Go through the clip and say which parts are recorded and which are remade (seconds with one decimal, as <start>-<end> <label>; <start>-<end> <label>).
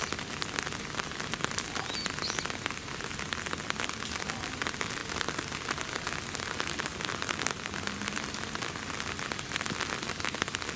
0.0-10.8 recorded